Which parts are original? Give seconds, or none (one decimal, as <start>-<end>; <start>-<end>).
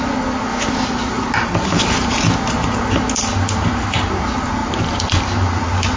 0.0-0.5; 1.3-4.6; 5.2-6.0